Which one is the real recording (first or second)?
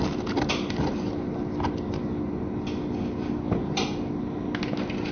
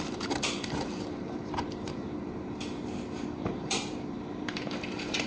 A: first